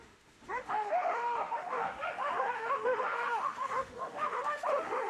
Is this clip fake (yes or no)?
yes